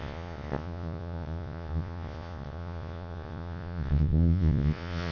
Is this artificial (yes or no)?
yes